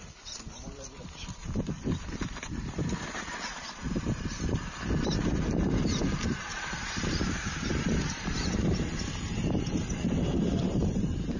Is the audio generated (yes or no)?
yes